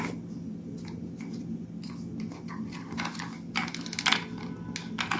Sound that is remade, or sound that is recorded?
recorded